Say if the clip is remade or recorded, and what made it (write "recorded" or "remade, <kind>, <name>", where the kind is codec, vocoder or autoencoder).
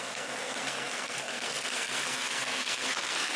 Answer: remade, codec, SNAC